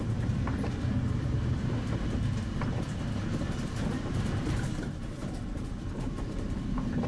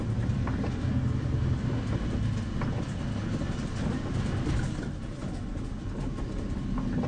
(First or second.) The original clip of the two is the second